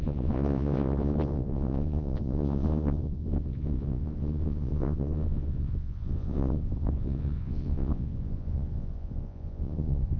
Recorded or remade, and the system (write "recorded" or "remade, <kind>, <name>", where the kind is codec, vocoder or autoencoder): remade, vocoder, Vocos